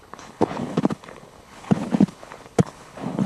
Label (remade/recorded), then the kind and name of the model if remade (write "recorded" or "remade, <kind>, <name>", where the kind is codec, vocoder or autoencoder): remade, codec, HILCodec